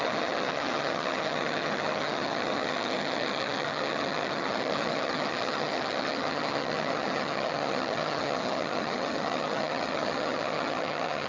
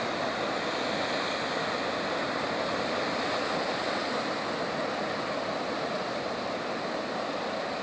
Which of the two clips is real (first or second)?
second